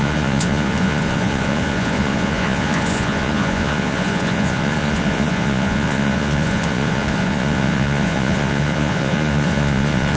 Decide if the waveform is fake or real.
fake